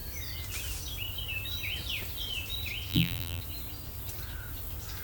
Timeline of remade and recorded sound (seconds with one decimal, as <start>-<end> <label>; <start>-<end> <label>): 0.0-2.9 recorded; 2.9-3.4 remade; 3.4-5.0 recorded